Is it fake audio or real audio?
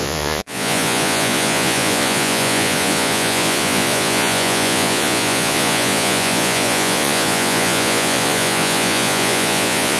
fake